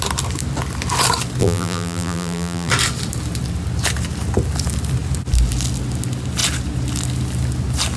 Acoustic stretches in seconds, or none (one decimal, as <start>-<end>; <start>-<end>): 0.0-1.4; 2.7-8.0